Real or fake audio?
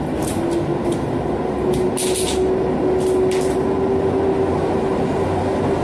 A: real